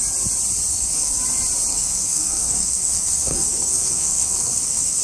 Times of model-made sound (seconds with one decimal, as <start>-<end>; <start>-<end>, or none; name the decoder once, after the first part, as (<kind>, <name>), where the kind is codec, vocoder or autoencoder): 0.7-1.2 (codec, SNAC); 1.7-5.0